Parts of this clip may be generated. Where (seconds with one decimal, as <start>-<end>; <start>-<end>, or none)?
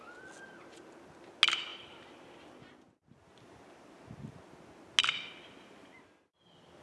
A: none